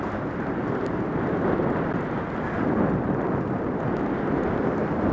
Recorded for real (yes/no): yes